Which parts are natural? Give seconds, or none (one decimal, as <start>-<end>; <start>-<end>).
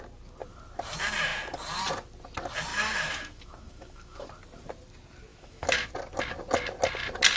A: 0.0-2.7; 4.3-5.3; 5.9-7.4